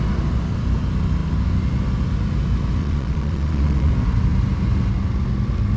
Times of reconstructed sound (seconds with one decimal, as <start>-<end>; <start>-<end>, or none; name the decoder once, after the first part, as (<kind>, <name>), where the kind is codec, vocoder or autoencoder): 2.8-3.9 (vocoder, Vocos)